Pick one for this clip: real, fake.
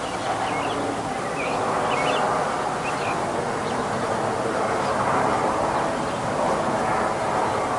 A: real